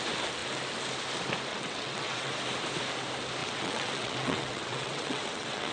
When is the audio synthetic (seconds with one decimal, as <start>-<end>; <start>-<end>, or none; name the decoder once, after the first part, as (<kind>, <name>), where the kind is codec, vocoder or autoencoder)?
1.5-2.3 (vocoder, WaveNeXt); 3.4-5.7

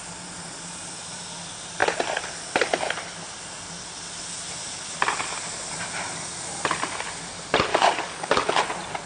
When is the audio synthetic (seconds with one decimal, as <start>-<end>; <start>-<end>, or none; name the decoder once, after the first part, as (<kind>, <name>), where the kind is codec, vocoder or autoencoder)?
7.7-8.6 (codec, DAC)

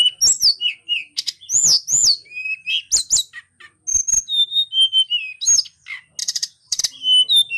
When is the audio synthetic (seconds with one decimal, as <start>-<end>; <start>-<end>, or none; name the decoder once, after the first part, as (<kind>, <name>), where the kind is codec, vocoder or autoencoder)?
6.2-6.8 (vocoder, BigVGAN v2)

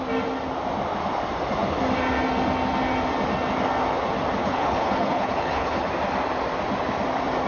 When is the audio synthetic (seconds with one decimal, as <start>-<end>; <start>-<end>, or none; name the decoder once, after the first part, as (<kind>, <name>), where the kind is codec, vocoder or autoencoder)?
4.4-5.9 (codec, HILCodec)